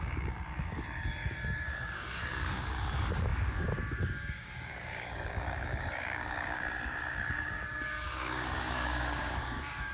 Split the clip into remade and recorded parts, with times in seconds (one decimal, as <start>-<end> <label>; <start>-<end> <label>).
0.0-9.9 remade